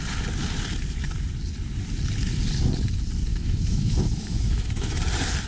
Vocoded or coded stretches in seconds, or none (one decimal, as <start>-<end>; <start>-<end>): 3.3-5.0